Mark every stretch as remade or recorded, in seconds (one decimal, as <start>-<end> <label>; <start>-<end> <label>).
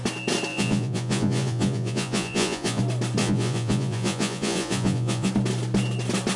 0.0-0.5 recorded; 0.5-2.8 remade; 2.8-3.2 recorded; 3.2-5.3 remade; 5.3-6.4 recorded